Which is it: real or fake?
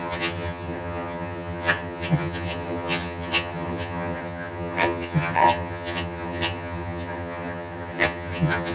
fake